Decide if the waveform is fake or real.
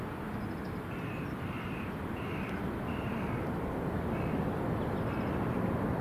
fake